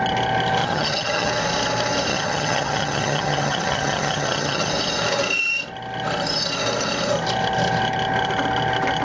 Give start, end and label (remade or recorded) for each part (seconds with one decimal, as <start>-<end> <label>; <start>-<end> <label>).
0.0-0.6 recorded; 0.6-1.3 remade; 1.3-2.1 recorded; 2.1-4.7 remade; 4.7-9.0 recorded